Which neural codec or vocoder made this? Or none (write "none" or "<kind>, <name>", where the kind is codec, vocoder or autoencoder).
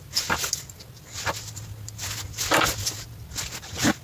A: none